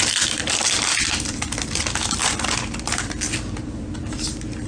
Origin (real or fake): fake